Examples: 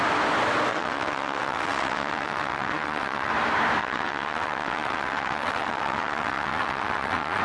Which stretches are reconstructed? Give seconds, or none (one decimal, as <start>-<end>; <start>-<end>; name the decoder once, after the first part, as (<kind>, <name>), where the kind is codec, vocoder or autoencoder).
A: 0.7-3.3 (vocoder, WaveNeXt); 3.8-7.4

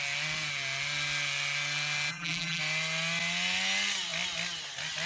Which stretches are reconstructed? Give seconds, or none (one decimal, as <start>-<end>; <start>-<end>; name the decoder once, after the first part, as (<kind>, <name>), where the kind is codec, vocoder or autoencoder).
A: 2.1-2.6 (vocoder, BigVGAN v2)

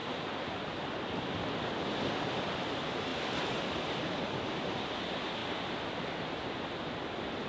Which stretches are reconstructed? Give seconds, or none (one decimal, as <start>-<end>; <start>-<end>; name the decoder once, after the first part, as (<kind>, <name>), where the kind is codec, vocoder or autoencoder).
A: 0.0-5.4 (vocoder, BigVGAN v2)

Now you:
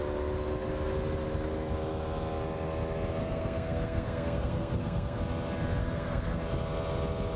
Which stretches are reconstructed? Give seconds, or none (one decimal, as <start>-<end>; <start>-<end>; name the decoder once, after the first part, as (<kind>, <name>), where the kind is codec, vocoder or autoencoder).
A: 3.2-5.2 (codec, SNAC); 5.8-6.4

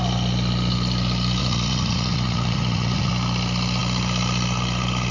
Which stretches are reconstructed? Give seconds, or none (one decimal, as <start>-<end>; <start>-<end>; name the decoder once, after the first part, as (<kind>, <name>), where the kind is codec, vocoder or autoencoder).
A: 1.4-3.1 (vocoder, Vocos)